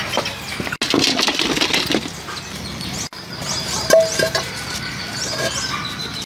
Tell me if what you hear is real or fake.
real